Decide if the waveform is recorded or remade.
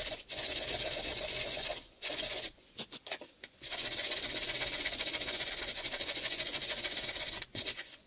remade